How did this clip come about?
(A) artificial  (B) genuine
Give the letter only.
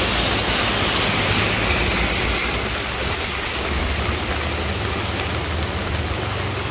B